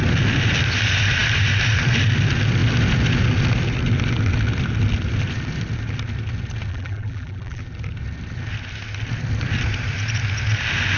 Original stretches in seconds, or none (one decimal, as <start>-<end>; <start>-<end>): 0.0-6.7; 7.6-11.0